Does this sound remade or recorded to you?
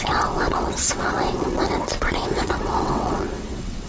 remade